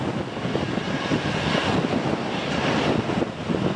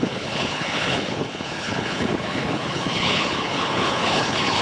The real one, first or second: first